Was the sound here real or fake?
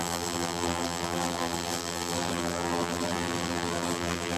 fake